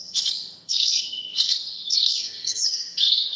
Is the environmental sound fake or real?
fake